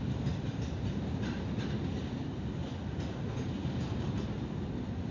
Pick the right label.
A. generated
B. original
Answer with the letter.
B